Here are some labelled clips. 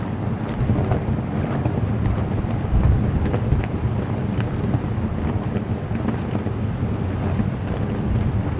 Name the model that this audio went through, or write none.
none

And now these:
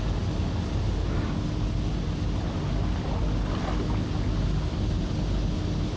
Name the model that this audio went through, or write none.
none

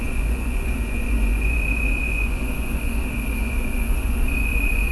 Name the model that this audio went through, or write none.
vocoder, Vocos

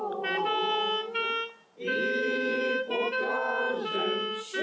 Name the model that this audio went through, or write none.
none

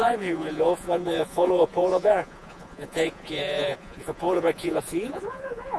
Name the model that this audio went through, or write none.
vocoder, Vocos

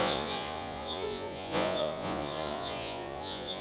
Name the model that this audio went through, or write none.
vocoder, Vocos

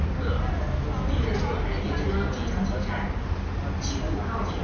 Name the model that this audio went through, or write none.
none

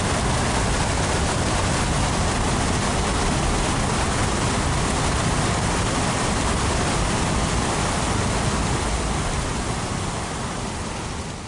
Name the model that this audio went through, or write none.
none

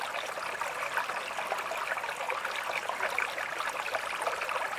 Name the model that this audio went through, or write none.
none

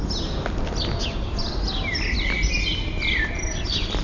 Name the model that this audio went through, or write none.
none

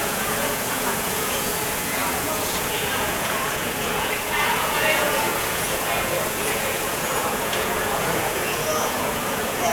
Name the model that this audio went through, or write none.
vocoder, Vocos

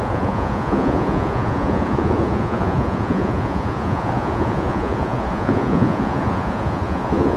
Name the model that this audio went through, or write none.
vocoder, Vocos